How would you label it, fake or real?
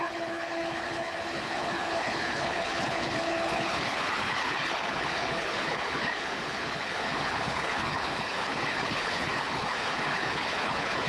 fake